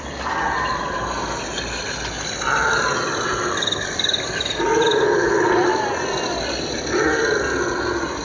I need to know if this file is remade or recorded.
recorded